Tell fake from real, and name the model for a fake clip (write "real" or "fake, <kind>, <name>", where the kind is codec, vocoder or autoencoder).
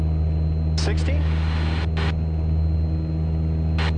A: real